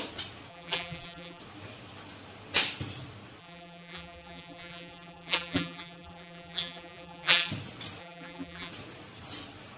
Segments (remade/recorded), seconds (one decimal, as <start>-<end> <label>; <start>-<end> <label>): 0.0-0.5 recorded; 0.5-1.4 remade; 1.4-3.4 recorded; 3.4-7.5 remade; 7.5-8.0 recorded; 8.0-8.7 remade; 8.7-9.8 recorded